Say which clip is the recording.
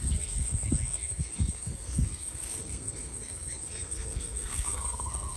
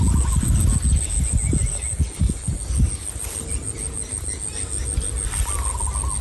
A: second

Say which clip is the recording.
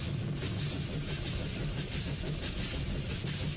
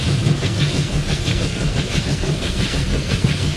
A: first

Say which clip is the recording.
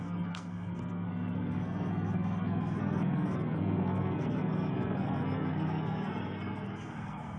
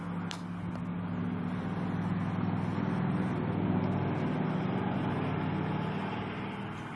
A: second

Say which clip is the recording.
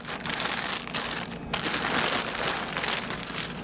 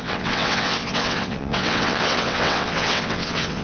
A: first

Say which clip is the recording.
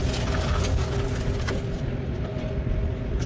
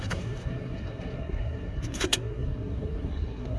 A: first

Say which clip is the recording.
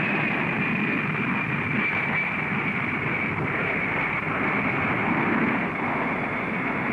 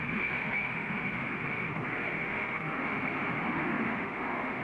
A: first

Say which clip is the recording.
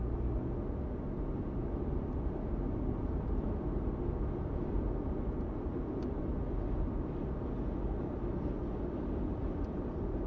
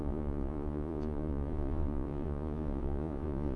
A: first